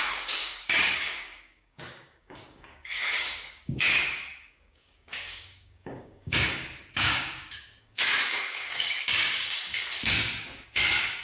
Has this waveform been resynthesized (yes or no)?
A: yes